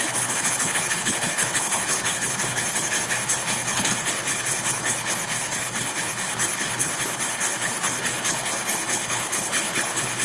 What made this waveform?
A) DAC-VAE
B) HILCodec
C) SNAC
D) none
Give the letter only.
B